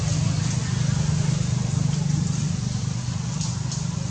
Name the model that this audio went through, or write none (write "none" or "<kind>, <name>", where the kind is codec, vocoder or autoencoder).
none